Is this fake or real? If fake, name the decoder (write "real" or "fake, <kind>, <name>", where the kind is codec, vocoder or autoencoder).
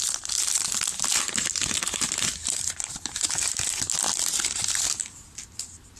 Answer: real